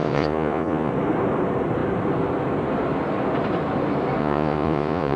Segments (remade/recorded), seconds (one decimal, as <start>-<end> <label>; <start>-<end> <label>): 0.0-0.9 remade; 0.9-4.2 recorded; 4.2-5.2 remade